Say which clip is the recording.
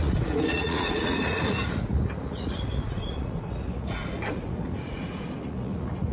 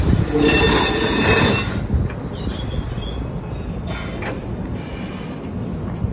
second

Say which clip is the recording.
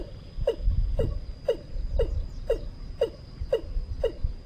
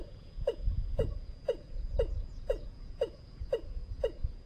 first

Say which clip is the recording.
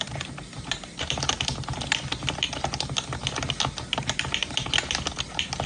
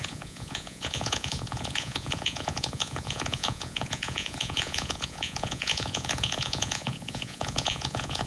first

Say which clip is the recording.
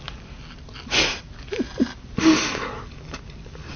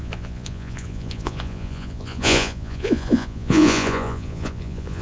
first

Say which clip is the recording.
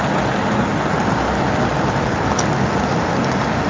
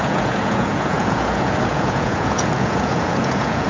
first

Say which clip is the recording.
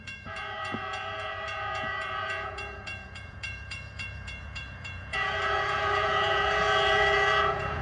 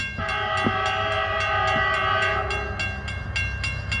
second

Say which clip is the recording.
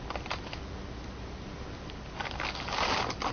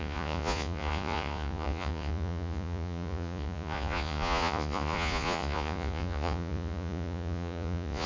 first